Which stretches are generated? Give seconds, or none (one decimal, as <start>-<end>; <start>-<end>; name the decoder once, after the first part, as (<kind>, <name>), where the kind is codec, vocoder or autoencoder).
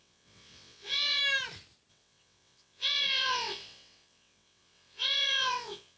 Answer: 0.0-1.2 (vocoder, WaveNeXt); 1.9-6.0